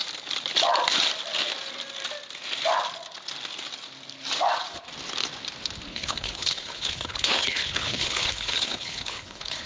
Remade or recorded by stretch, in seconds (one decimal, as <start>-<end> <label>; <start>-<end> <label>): 0.0-5.9 recorded; 5.9-9.7 remade